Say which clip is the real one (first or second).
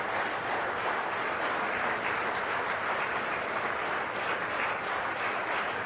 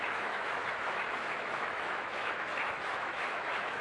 first